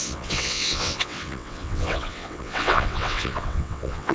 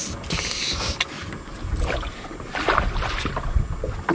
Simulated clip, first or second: first